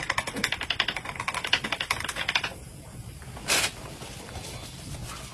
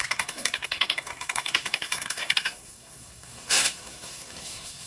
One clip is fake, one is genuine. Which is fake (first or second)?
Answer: second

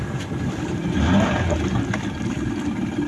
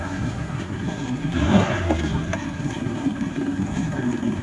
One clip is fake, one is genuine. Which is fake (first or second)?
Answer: second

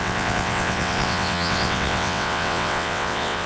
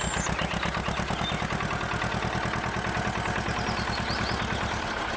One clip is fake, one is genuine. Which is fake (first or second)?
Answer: first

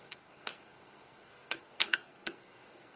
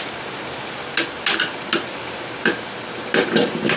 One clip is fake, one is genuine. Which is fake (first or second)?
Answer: first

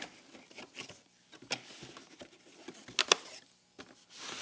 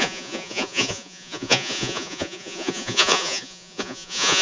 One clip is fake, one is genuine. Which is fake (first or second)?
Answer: second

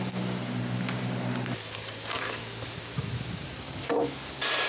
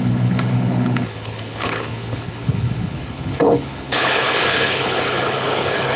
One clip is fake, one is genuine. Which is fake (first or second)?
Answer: second